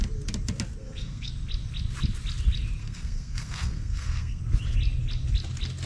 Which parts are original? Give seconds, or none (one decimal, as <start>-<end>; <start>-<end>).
0.0-0.8; 1.3-2.8; 4.4-5.9